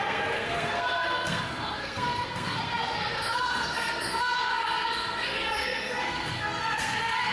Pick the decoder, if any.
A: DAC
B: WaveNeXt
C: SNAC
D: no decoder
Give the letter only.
C